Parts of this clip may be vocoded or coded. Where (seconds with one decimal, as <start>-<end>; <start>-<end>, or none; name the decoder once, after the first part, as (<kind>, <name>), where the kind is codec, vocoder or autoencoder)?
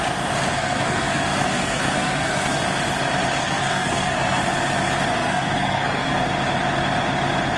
0.5-2.6 (codec, SNAC); 3.4-4.4; 5.1-6.2